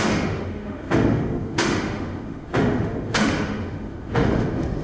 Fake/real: fake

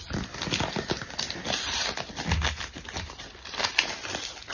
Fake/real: real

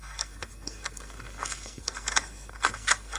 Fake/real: fake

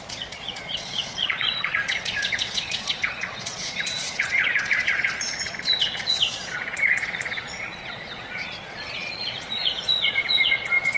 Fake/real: fake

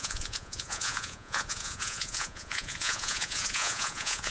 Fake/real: fake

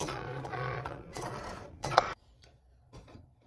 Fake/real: fake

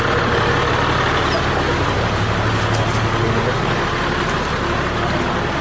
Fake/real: real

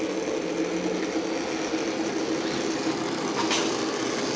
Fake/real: real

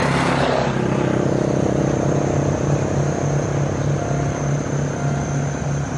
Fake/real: real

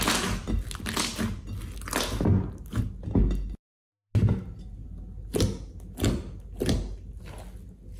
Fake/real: real